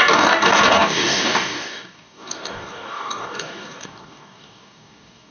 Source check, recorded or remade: remade